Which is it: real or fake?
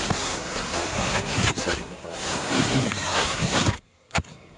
fake